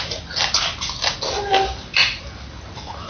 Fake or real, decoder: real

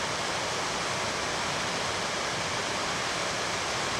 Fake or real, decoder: real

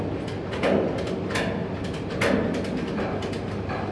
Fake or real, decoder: real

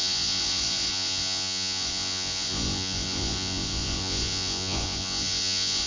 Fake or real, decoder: fake, vocoder, Vocos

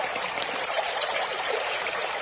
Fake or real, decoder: fake, vocoder, BigVGAN v2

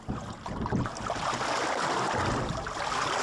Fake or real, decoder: real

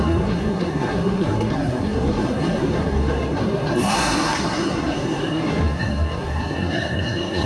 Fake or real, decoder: fake, codec, SNAC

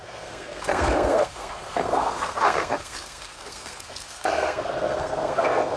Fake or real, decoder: fake, codec, SNAC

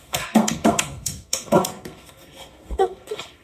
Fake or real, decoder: fake, codec, SNAC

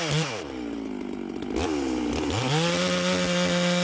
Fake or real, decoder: real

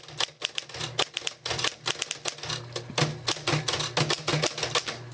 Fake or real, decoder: real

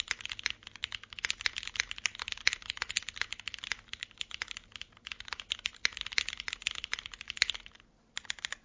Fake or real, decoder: real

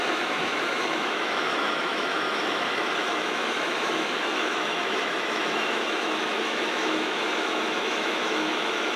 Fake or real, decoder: fake, autoencoder, DAC-VAE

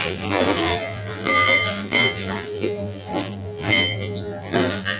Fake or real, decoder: fake, vocoder, BigVGAN v2